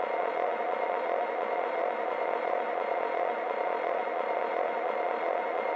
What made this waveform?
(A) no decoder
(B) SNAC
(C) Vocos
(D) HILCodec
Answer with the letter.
C